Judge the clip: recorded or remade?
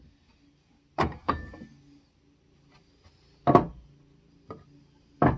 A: recorded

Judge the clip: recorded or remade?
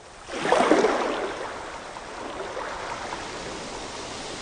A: recorded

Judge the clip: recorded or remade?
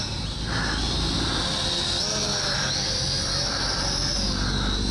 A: recorded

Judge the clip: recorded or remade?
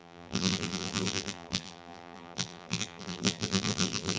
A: remade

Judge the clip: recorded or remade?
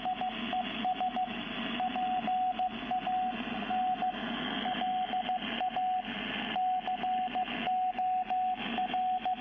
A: recorded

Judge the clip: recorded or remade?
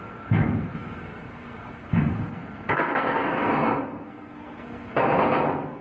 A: remade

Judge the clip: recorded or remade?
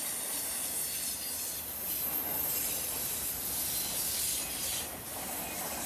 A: recorded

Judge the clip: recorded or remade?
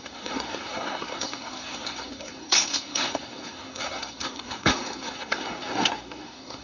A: remade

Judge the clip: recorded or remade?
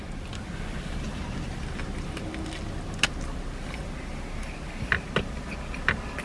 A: recorded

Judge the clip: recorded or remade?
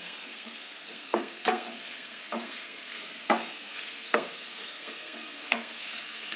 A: remade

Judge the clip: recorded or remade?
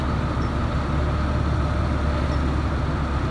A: recorded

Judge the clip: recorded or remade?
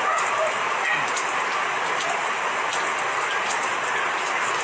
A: recorded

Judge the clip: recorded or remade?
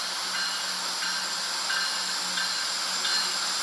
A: recorded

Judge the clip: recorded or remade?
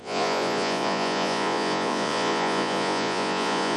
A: remade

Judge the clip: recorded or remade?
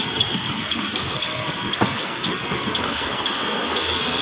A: remade